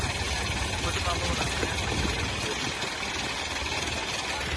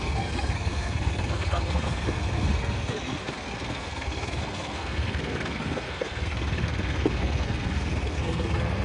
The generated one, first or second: second